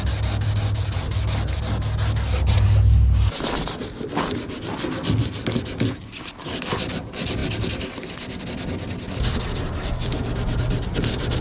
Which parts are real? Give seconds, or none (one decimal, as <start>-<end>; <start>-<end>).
0.0-11.4